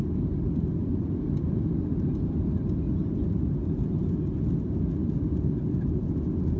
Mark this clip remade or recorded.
recorded